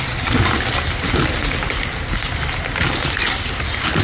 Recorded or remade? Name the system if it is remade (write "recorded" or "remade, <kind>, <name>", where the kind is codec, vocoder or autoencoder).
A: recorded